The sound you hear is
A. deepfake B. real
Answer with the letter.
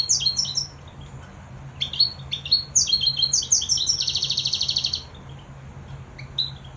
B